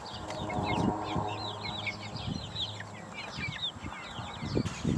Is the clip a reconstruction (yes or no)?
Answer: no